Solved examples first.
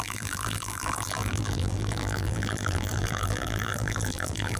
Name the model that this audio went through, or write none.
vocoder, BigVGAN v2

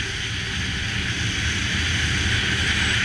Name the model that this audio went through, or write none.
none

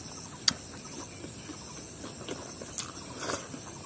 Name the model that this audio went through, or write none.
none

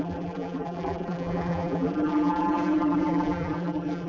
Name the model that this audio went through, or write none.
vocoder, BigVGAN v2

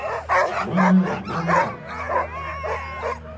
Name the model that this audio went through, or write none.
none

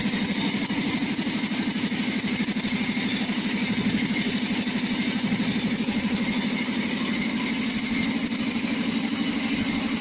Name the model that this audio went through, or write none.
none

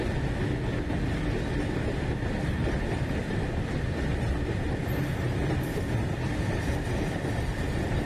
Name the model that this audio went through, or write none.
vocoder, BigVGAN v2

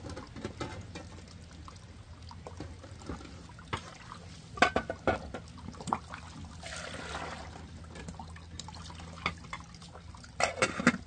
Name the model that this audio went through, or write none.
none